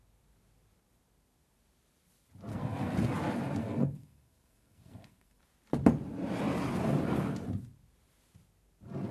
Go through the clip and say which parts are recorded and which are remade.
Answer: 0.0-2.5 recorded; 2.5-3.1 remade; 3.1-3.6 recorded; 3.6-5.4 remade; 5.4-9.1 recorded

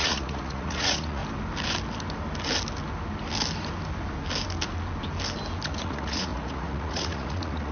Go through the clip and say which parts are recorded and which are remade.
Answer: 0.0-1.2 remade; 1.2-5.8 recorded; 5.8-7.7 remade

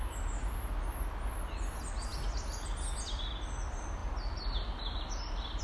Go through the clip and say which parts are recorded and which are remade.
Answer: 0.0-5.6 recorded

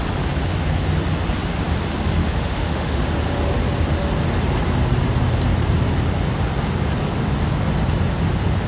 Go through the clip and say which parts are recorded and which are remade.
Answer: 0.0-2.2 recorded; 2.2-3.0 remade; 3.0-8.7 recorded